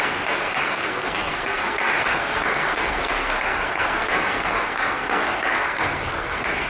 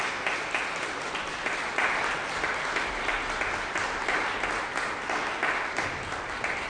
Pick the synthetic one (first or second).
first